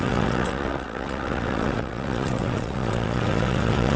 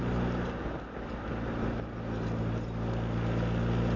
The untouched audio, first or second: second